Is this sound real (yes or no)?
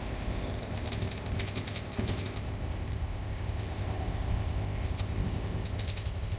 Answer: no